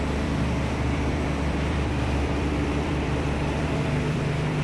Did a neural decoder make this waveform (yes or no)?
yes